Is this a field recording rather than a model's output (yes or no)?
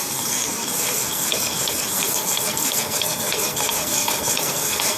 no